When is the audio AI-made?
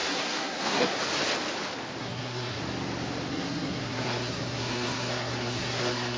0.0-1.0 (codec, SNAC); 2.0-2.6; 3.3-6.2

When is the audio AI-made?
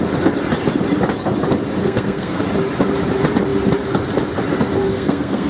1.8-2.4 (codec, SNAC); 4.9-5.5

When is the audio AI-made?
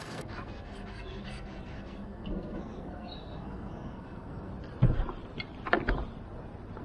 0.0-4.5 (codec, SNAC)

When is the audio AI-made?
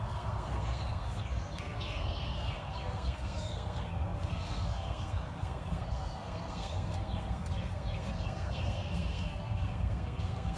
0.0-10.6 (codec, SNAC)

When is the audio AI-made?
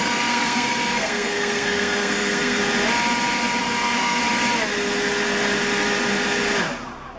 0.0-2.6 (codec, SNAC); 3.6-4.2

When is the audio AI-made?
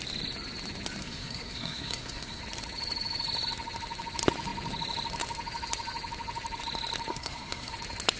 1.0-2.4 (codec, SNAC); 7.1-7.7